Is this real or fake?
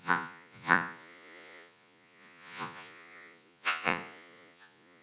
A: fake